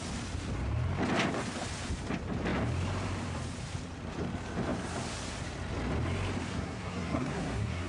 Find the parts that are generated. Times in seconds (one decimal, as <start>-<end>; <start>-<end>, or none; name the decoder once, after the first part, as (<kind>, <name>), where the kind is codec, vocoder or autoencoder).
6.5-7.9 (codec, SNAC)